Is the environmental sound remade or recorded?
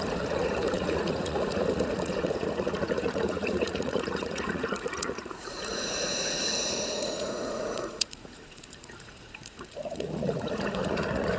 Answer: remade